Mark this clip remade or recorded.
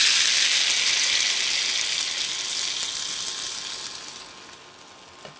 recorded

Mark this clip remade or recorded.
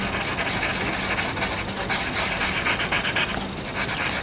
recorded